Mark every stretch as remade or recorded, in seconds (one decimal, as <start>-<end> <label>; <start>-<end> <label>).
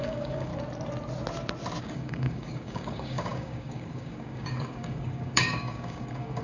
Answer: 0.0-0.5 remade; 0.5-1.8 recorded; 1.8-6.4 remade